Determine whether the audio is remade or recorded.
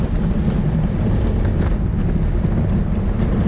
recorded